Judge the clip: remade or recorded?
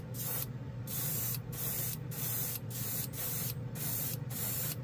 remade